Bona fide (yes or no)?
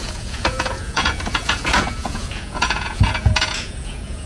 no